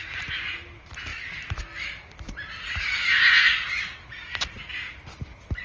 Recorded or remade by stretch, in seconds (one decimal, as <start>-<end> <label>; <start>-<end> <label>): 0.0-5.6 recorded